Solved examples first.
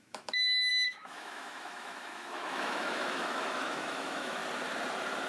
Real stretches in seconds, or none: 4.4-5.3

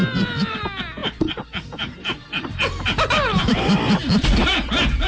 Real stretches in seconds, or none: 0.0-1.0; 3.5-5.1

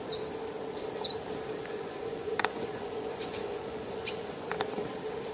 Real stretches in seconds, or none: 0.0-1.6; 4.5-5.3